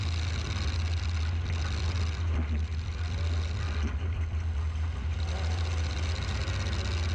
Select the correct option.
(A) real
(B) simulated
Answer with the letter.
A